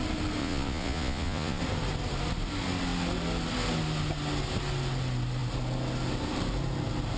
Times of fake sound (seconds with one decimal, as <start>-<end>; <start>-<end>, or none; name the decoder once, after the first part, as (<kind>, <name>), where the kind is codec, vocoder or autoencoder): 0.4-1.6 (vocoder, Vocos)